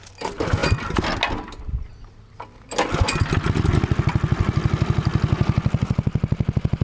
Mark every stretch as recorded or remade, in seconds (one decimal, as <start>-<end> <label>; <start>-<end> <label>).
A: 0.0-6.8 recorded